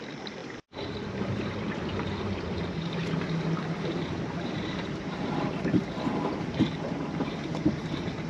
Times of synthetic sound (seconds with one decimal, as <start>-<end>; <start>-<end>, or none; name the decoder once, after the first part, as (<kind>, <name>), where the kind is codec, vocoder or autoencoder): 0.0-8.3 (vocoder, BigVGAN v2)